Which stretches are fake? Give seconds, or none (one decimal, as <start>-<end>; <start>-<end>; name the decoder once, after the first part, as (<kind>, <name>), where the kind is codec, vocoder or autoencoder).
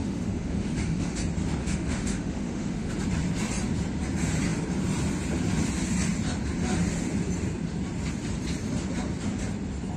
0.0-1.2 (autoencoder, DAC-VAE); 1.6-2.9